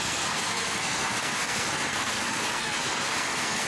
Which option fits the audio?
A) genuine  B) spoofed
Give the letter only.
B